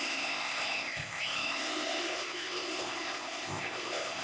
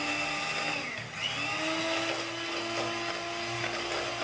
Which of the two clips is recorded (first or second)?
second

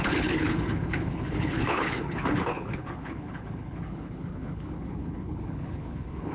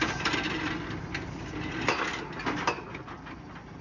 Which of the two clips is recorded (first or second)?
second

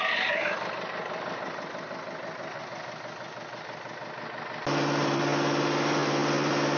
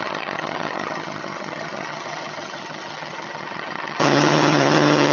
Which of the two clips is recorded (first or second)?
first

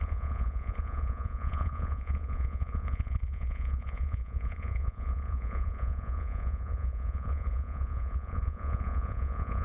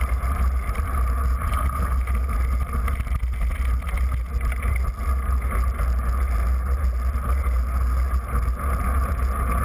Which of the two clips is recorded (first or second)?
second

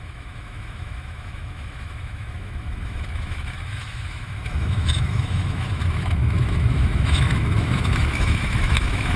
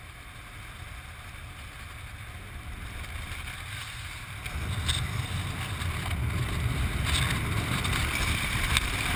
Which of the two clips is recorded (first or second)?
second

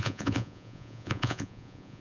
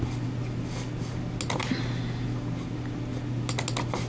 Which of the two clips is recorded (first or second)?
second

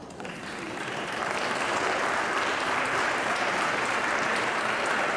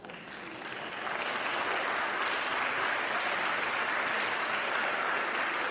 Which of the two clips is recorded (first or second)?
second